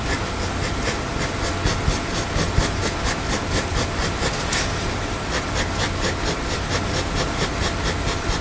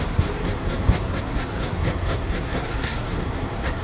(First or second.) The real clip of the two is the first